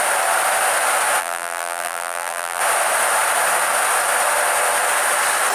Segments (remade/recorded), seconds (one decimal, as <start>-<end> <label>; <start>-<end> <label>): 0.0-1.2 recorded; 1.2-2.6 remade; 2.6-5.5 recorded